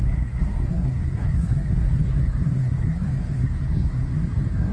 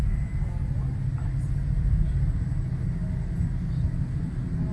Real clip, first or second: second